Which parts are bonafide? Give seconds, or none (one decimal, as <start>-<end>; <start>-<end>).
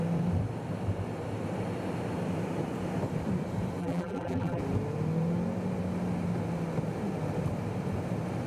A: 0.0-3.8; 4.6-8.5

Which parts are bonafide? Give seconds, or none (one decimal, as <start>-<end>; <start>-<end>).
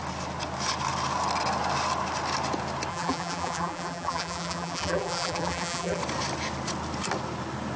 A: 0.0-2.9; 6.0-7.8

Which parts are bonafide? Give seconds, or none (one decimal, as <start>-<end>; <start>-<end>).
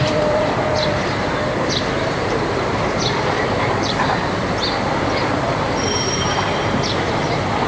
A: 4.4-5.3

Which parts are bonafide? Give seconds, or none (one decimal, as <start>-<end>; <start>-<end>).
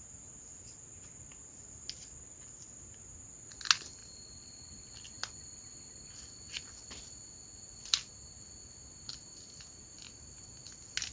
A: 0.0-4.0; 4.5-11.1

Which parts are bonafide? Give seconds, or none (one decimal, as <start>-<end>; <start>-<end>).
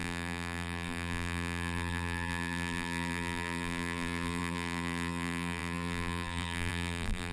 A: none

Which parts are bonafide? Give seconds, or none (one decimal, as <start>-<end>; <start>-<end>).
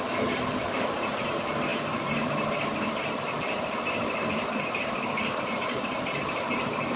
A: none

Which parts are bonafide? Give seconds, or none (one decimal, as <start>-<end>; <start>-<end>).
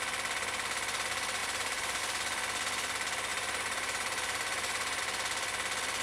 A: 0.0-1.4; 2.0-3.3; 5.0-6.0